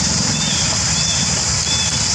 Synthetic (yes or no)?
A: no